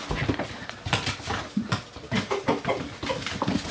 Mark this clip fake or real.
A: real